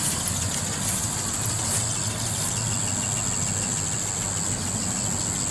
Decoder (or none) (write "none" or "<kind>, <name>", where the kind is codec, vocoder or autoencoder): none